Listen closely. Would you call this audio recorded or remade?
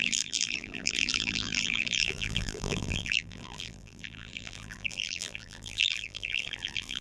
remade